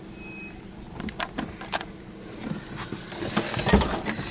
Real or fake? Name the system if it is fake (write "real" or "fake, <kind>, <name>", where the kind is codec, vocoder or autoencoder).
real